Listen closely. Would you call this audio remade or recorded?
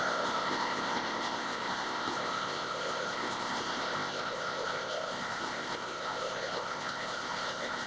remade